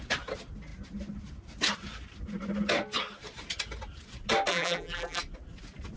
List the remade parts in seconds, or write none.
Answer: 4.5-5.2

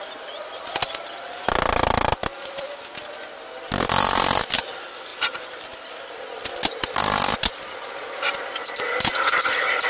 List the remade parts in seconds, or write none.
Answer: none